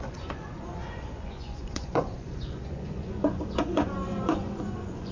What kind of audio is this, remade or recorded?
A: remade